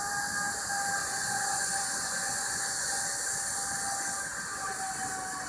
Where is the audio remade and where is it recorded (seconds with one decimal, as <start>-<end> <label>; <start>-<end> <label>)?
0.0-1.0 recorded; 1.0-3.0 remade; 3.0-5.5 recorded